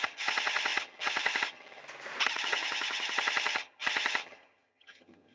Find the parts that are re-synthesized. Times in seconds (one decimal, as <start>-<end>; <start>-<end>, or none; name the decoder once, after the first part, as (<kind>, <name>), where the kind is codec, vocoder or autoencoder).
0.0-1.8 (vocoder, HiFi-GAN); 2.4-5.3